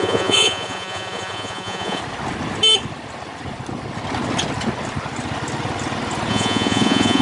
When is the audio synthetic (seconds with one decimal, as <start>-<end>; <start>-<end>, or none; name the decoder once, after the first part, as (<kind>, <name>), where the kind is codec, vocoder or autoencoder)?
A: 0.0-2.0 (vocoder, Vocos); 6.3-7.2